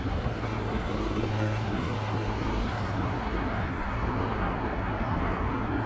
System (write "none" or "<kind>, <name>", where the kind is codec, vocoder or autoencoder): codec, SNAC